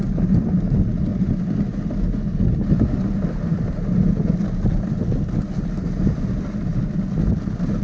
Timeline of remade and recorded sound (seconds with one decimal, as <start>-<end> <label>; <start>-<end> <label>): 0.0-7.8 recorded